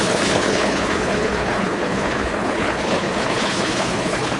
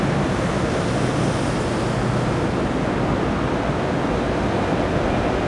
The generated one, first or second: first